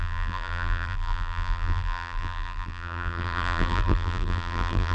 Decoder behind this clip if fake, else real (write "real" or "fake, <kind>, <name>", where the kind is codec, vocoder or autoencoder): fake, vocoder, BigVGAN v2